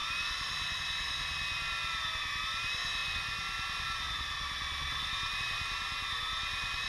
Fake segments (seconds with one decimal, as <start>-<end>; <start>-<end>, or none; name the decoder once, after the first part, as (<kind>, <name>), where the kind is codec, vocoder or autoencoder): none